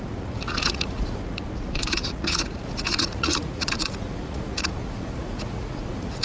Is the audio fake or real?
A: fake